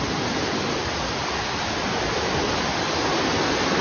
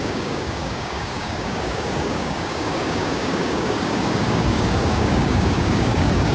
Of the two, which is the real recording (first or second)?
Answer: first